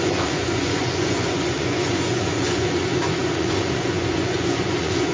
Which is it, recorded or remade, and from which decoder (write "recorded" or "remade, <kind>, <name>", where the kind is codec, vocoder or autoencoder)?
remade, vocoder, Vocos